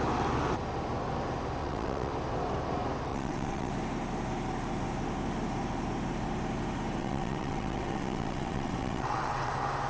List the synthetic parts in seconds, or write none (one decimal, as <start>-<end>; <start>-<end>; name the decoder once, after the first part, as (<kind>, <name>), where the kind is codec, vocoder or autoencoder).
1.6-2.1 (vocoder, WaveNeXt); 3.1-3.7; 7.0-9.5